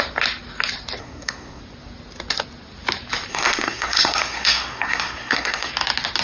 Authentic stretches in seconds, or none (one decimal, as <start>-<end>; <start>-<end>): 0.0-1.0; 1.6-3.3; 5.7-6.2